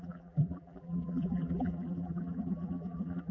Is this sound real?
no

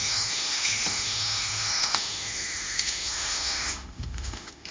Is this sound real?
no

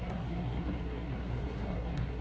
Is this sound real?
no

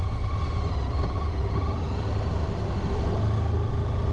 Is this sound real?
yes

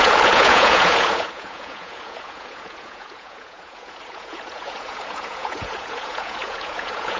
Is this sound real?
no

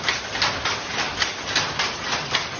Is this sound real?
yes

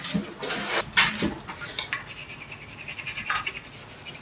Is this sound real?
yes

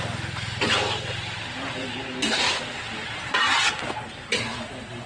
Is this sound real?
yes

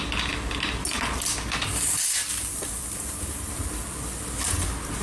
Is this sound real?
yes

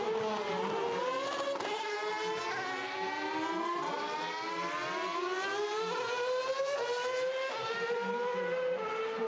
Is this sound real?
yes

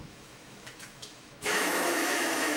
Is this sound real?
no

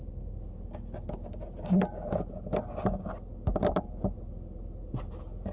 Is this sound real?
yes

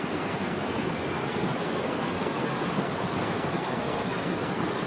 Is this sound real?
no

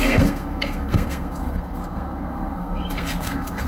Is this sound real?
no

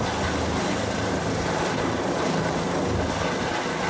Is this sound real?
yes